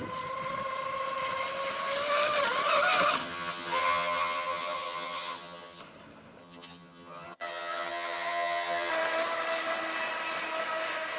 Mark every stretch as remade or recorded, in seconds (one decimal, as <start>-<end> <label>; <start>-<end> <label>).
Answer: 0.0-3.2 recorded; 3.2-5.8 remade; 5.8-6.4 recorded; 6.4-8.9 remade; 8.9-11.2 recorded

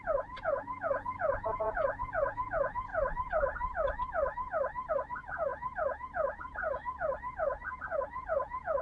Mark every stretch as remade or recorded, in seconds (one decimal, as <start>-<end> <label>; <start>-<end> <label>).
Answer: 0.0-2.9 remade; 2.9-4.9 recorded; 4.9-8.8 remade

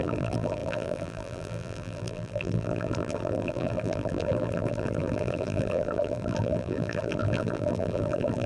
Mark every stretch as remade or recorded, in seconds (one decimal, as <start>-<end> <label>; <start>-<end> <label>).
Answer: 0.0-8.5 remade

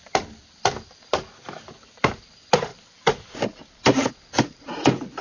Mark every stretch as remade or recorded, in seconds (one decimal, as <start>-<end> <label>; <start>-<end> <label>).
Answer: 0.0-5.2 remade